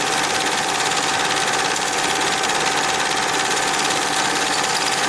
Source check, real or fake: real